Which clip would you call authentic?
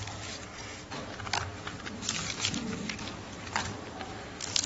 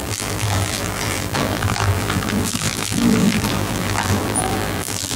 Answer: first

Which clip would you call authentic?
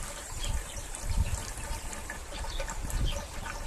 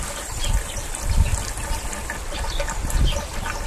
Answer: second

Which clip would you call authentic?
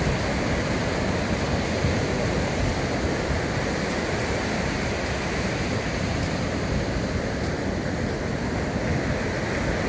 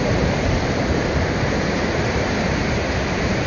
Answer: first